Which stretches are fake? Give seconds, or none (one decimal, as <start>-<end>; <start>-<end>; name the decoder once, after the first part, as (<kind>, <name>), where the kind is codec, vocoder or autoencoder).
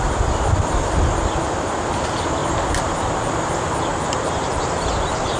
none